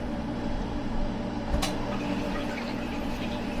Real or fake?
fake